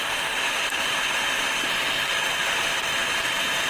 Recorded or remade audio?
remade